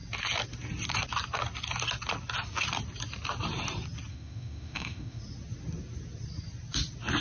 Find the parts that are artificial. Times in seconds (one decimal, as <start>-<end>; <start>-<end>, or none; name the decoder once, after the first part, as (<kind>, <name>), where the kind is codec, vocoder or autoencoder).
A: 4.1-5.2 (autoencoder, DAC-VAE)